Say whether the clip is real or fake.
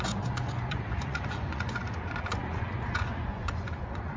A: fake